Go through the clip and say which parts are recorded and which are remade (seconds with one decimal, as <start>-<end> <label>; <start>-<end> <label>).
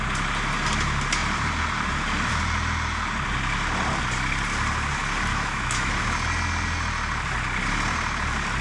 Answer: 0.0-5.3 recorded; 5.3-5.9 remade; 5.9-8.6 recorded